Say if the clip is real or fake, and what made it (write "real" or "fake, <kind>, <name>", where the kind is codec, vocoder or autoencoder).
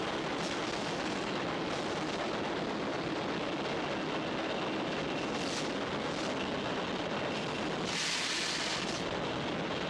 real